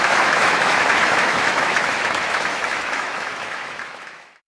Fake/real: fake